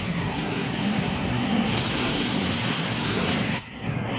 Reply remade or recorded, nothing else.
remade